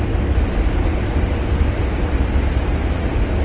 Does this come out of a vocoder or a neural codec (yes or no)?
no